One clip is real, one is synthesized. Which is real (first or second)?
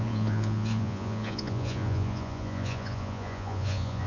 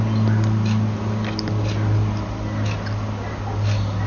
second